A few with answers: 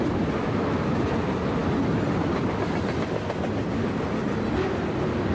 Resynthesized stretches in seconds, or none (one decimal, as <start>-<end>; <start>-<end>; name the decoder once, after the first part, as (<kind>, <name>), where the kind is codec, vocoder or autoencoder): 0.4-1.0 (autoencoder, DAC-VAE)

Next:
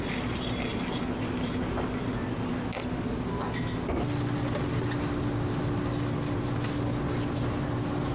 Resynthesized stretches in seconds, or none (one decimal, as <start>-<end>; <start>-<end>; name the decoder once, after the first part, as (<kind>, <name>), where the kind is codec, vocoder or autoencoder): none

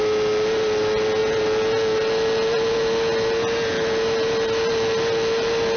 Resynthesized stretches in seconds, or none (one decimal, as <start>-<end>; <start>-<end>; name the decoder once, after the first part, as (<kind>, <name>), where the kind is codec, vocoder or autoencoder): none

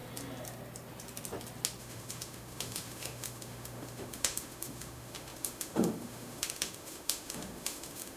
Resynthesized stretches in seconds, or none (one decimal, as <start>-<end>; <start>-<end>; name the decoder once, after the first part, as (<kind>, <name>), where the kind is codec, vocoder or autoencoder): 1.8-8.2 (autoencoder, DAC-VAE)

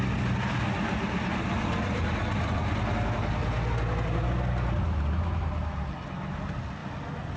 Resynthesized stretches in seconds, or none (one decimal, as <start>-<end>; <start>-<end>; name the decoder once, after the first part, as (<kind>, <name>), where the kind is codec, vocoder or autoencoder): none